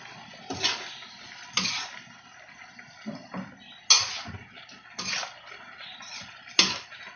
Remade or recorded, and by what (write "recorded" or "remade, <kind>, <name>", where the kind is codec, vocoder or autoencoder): recorded